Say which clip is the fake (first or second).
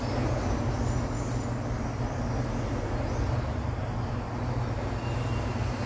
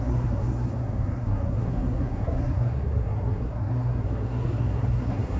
second